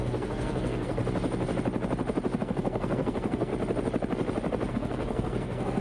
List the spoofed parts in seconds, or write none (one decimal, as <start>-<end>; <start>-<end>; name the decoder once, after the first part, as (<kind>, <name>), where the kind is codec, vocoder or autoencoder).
0.0-1.0 (codec, SNAC); 2.4-3.5; 4.7-5.8